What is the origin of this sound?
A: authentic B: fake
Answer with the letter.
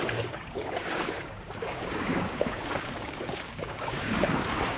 B